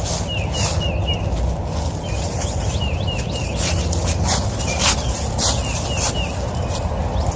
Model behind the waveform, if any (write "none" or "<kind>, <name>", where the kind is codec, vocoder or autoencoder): none